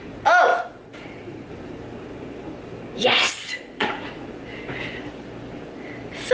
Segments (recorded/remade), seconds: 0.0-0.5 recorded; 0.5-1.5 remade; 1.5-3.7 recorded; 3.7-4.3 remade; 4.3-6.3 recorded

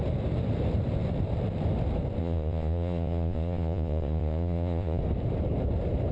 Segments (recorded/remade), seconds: 0.0-2.2 recorded; 2.2-5.0 remade; 5.0-6.1 recorded

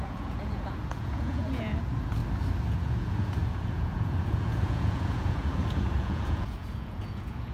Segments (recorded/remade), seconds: 0.0-2.2 remade; 2.2-2.7 recorded; 2.7-7.5 remade

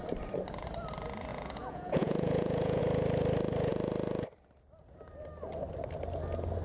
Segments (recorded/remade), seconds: 0.0-1.3 recorded; 1.3-2.8 remade; 2.8-6.6 recorded